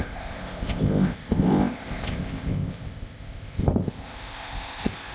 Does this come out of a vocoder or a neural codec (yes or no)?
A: yes